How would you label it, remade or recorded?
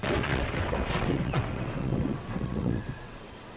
remade